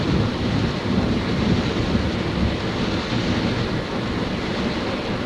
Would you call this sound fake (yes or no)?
no